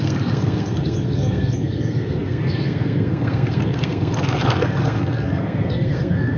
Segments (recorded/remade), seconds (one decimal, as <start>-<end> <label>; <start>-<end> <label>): 0.0-6.4 remade